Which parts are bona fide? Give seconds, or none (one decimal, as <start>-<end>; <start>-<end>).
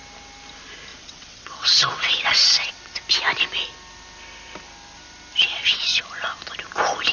0.0-0.9; 3.0-5.4; 6.0-7.1